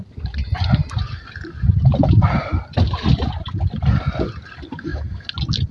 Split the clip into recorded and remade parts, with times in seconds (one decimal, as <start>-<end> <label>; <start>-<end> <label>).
0.0-5.7 recorded